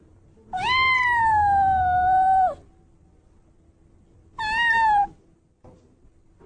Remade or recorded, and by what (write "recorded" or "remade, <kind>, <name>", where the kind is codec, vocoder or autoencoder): recorded